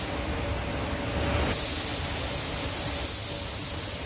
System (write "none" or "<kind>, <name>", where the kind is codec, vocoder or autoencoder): none